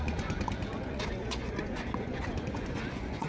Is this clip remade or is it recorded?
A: remade